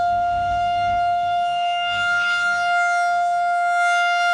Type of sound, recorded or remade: remade